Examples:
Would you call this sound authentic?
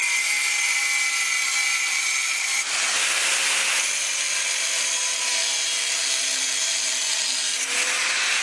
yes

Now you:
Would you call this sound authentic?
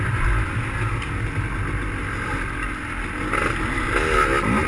yes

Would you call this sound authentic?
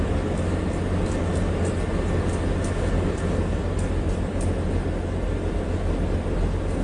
yes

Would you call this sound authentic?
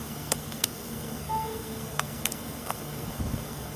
no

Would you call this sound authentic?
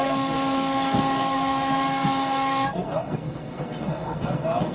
no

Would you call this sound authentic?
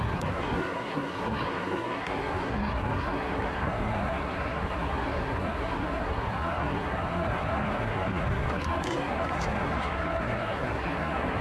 no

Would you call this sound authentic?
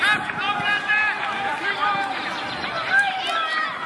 yes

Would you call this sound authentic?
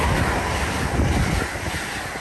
yes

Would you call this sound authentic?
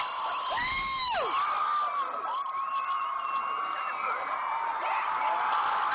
yes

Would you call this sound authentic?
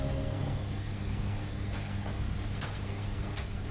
no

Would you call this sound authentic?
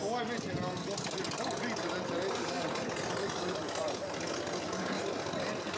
yes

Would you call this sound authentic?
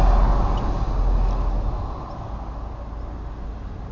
yes